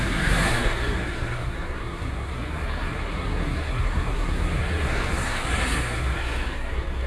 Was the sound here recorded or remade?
remade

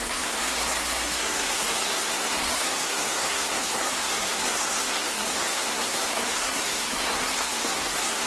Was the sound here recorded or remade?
remade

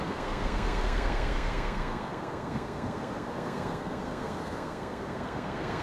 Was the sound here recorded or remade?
remade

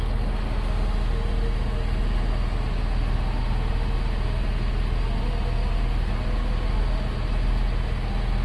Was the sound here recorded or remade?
recorded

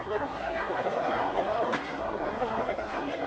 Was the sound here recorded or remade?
remade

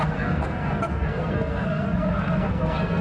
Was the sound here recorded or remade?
remade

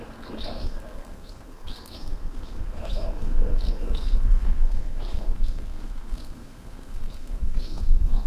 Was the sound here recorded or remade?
remade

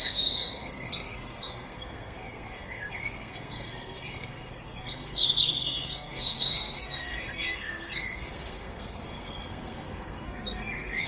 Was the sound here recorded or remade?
remade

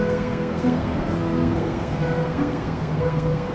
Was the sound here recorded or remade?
remade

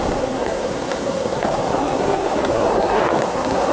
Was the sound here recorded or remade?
remade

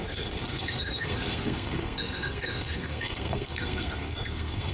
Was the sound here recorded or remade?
remade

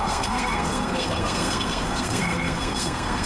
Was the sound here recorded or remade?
remade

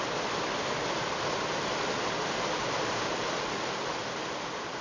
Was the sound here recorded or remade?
recorded